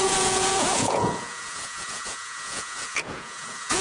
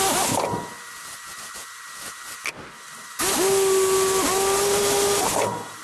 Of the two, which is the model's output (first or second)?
first